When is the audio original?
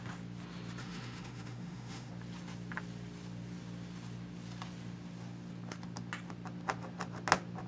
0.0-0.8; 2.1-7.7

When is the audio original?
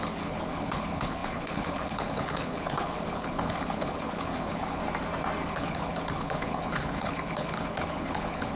4.8-5.5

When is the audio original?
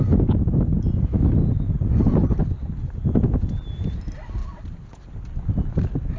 0.0-6.2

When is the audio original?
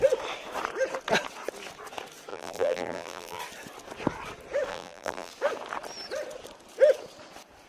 0.0-2.3; 3.4-4.7; 5.3-7.7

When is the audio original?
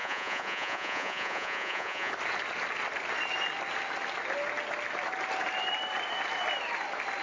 2.1-7.2